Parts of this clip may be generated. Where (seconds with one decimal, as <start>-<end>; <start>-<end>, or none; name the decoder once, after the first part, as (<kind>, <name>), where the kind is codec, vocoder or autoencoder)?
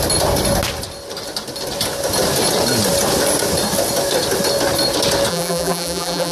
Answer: 5.3-6.3 (vocoder, BigVGAN v2)